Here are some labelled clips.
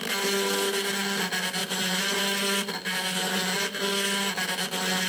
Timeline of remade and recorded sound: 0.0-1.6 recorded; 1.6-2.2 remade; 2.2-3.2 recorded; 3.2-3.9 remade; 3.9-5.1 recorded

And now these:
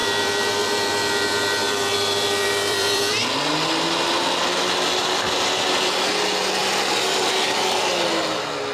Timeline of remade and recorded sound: 0.0-3.1 remade; 3.1-5.0 recorded; 5.0-6.1 remade; 6.1-6.6 recorded; 6.6-7.8 remade; 7.8-8.7 recorded

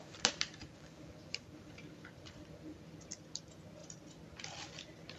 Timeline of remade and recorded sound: 0.0-0.6 recorded; 0.6-3.1 remade; 3.1-5.2 recorded

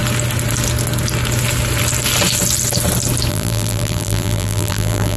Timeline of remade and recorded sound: 0.0-3.3 recorded; 3.3-5.2 remade